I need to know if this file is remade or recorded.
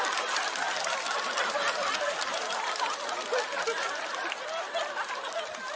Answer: recorded